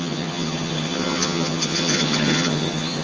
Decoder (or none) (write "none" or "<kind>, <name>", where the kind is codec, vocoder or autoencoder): vocoder, HiFi-GAN